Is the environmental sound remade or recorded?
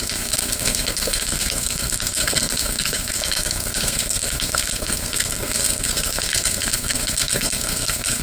remade